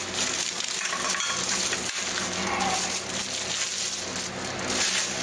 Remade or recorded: recorded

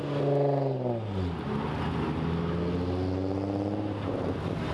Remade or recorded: recorded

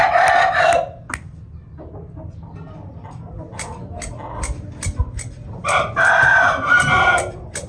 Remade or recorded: recorded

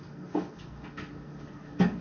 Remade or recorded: remade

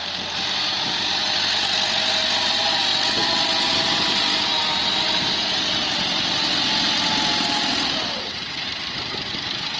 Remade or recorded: recorded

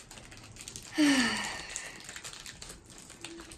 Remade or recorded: recorded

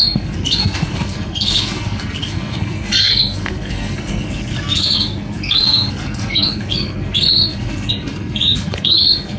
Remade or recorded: remade